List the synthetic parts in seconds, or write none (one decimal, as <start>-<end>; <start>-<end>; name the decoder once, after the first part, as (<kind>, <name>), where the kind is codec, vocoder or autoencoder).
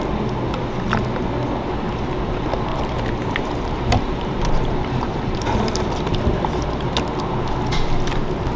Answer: 2.7-5.2 (vocoder, BigVGAN v2)